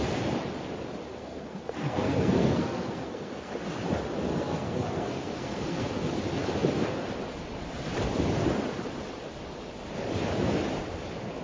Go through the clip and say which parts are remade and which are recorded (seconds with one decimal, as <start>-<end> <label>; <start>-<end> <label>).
0.0-1.1 recorded; 1.1-3.5 remade; 3.5-4.3 recorded; 4.3-6.1 remade; 6.1-11.4 recorded